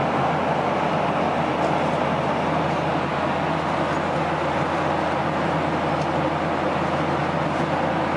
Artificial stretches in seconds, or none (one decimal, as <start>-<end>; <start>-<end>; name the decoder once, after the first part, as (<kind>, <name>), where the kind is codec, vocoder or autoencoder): none